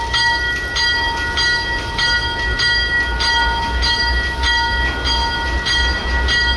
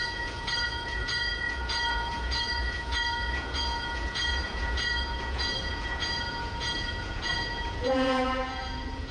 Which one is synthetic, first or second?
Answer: second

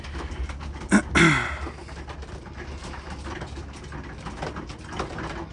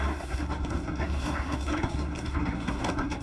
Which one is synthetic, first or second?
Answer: second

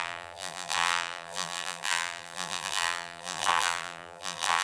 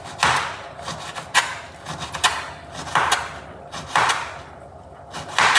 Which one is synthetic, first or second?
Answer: first